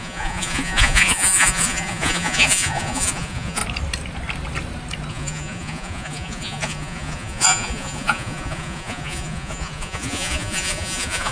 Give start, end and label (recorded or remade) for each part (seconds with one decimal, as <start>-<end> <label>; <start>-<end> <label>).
0.0-3.6 remade; 3.6-5.1 recorded; 5.1-11.3 remade